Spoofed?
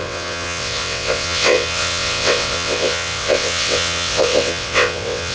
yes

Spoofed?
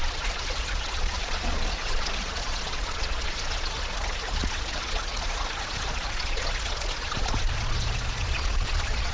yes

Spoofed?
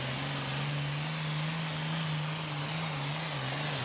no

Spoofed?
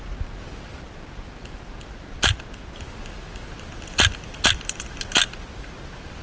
no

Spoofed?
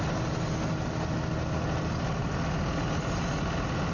no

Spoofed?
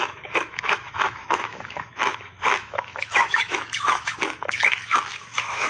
yes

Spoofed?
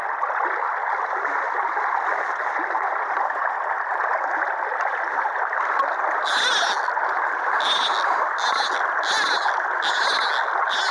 no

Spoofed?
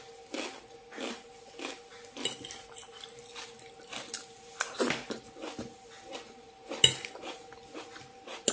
no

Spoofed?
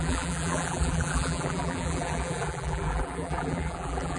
yes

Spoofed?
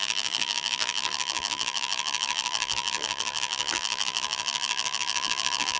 yes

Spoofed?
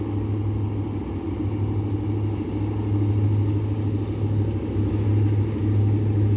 no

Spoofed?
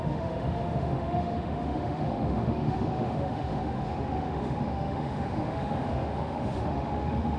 yes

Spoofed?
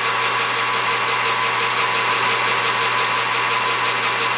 no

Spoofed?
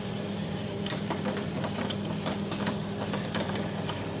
yes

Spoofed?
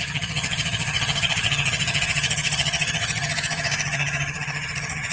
yes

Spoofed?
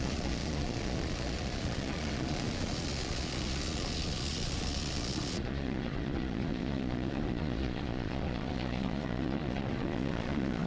yes